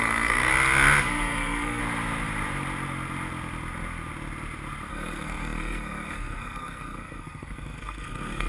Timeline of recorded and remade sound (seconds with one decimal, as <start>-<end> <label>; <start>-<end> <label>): 0.0-0.5 remade; 0.5-1.0 recorded; 1.0-1.8 remade; 1.8-4.9 recorded; 4.9-8.5 remade